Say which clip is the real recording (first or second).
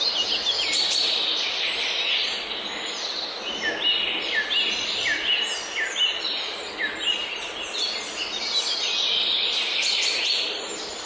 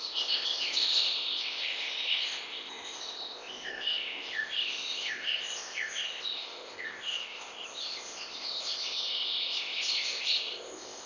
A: first